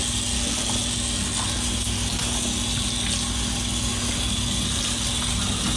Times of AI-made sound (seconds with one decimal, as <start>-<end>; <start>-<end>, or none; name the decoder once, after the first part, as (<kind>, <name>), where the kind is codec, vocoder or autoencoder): none